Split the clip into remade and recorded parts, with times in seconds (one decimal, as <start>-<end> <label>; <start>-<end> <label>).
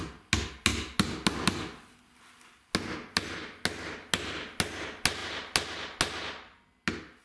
0.0-7.2 recorded